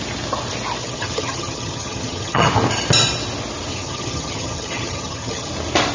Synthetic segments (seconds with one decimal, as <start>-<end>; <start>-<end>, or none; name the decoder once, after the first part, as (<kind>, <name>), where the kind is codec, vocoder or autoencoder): 0.8-2.5 (vocoder, HiFi-GAN); 3.7-5.5